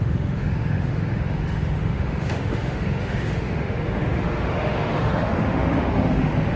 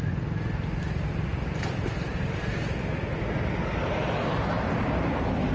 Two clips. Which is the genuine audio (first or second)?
second